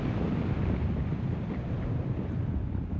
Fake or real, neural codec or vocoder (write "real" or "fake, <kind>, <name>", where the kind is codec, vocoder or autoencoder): real